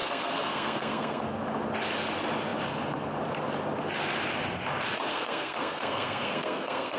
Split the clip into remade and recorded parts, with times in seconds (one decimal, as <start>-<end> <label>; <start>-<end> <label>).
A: 0.0-1.2 remade; 1.2-5.1 recorded; 5.1-7.0 remade